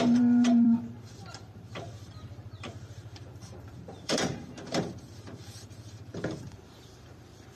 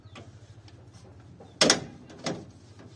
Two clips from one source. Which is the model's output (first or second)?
first